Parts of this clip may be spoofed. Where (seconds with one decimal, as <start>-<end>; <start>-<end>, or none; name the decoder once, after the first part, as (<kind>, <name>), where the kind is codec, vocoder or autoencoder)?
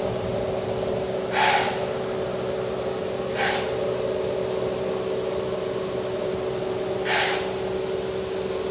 none